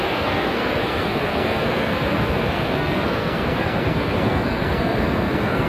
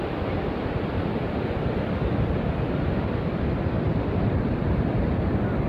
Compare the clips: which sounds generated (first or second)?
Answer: first